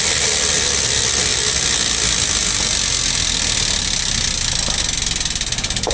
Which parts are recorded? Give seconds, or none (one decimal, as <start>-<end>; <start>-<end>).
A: 0.0-5.9